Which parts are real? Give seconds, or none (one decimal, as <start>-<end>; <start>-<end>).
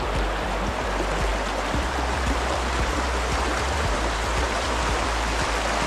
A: 0.0-1.3; 4.8-5.9